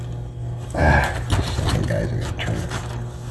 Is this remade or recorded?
recorded